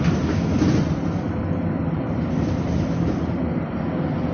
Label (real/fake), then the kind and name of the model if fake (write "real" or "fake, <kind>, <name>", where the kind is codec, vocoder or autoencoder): real